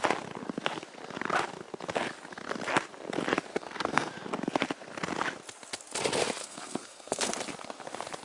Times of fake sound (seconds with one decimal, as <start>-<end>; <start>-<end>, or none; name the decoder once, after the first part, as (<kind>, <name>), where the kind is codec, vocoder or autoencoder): 3.5-4.1 (codec, SNAC); 6.4-7.3